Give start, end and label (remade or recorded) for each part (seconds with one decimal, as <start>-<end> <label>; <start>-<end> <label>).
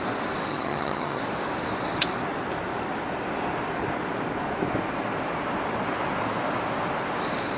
0.0-0.5 recorded; 0.5-1.2 remade; 1.2-7.6 recorded